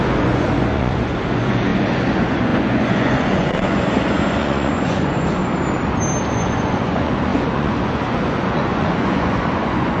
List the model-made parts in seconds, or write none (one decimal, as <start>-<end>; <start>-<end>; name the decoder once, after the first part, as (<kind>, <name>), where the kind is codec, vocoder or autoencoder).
0.0-5.4 (vocoder, Vocos); 6.3-10.0